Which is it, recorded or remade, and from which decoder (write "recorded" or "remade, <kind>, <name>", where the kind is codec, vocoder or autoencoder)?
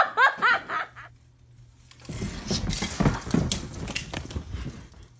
recorded